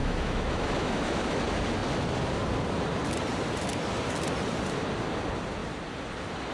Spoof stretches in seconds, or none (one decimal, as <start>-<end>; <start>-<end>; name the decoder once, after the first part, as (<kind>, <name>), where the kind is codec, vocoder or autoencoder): 0.0-1.4 (autoencoder, DAC-VAE)